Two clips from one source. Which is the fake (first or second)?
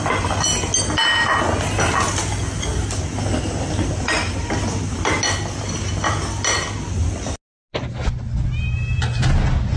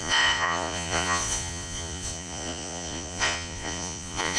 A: second